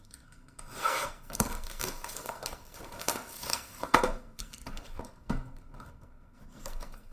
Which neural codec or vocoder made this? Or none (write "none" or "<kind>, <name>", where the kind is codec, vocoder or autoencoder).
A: codec, SNAC